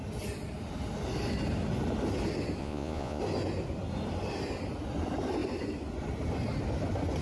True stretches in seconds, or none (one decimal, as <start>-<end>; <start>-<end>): 0.0-2.6; 3.2-7.2